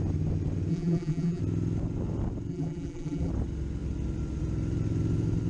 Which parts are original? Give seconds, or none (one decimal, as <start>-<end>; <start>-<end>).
0.0-0.7; 1.4-2.5; 3.3-5.5